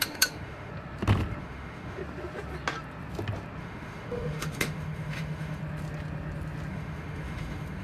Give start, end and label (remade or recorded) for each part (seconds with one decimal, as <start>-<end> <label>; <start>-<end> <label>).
0.0-0.7 remade; 0.7-1.4 recorded; 1.4-2.0 remade; 2.0-3.6 recorded; 3.6-5.6 remade; 5.6-6.7 recorded; 6.7-7.8 remade

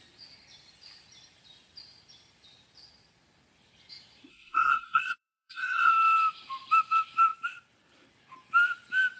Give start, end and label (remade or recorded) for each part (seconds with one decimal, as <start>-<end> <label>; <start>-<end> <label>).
0.0-4.3 recorded; 4.3-5.9 remade; 5.9-9.2 recorded

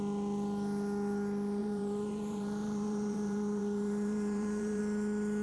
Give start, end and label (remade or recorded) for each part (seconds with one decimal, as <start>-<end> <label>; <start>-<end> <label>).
0.0-1.6 recorded; 1.6-4.8 remade; 4.8-5.4 recorded

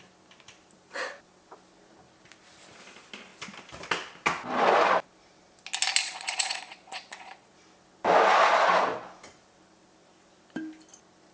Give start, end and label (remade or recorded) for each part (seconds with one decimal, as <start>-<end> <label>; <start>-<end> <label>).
0.0-6.0 recorded; 6.0-7.5 remade; 7.5-11.3 recorded

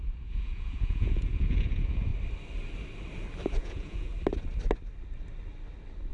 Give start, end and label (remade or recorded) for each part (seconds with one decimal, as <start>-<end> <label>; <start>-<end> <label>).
0.0-2.1 remade; 2.1-3.6 recorded; 3.6-4.1 remade; 4.1-6.1 recorded